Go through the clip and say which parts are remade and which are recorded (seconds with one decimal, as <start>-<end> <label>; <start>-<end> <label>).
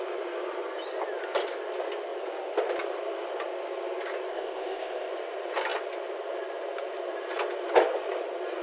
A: 0.0-4.3 recorded; 4.3-5.1 remade; 5.1-8.6 recorded